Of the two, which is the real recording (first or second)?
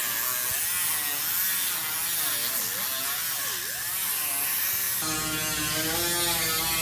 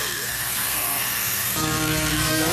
first